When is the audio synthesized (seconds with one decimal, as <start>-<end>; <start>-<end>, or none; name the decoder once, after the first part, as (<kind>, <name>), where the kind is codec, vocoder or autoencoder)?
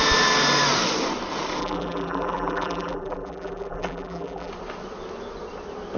1.6-4.5 (vocoder, BigVGAN v2)